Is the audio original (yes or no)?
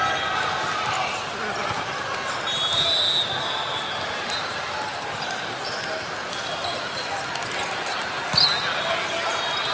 yes